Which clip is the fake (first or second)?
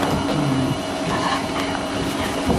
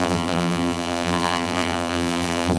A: second